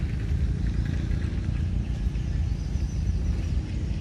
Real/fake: real